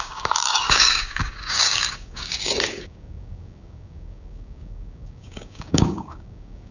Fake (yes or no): yes